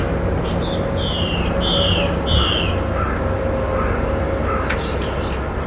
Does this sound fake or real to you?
real